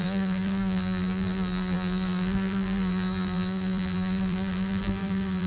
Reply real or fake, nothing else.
fake